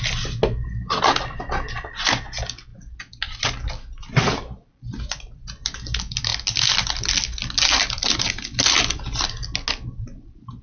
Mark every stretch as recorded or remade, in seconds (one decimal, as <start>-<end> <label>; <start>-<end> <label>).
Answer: 0.0-10.6 recorded